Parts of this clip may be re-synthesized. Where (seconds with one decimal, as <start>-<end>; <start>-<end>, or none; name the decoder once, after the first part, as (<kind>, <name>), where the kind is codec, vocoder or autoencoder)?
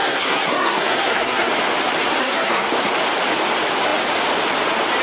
0.0-1.5 (codec, SNAC); 2.2-2.9